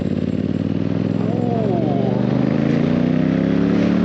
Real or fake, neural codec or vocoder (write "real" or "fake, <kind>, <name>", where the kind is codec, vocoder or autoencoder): real